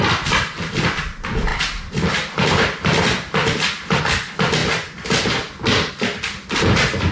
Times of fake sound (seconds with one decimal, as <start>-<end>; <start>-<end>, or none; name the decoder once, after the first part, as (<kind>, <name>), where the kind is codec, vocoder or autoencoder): none